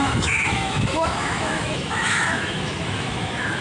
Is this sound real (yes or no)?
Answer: no